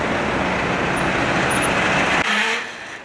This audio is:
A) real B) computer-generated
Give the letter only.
A